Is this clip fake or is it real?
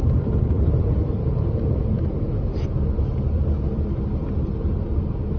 fake